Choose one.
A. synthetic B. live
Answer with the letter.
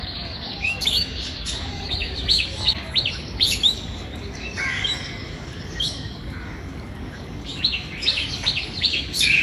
A